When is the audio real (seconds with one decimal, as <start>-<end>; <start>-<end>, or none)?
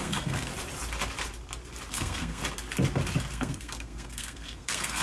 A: 0.5-1.9; 2.4-3.3